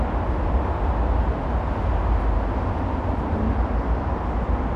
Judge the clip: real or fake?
real